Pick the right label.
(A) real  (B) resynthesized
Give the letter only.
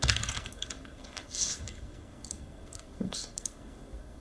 B